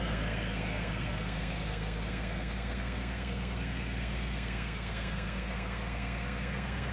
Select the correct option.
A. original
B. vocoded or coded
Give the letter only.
B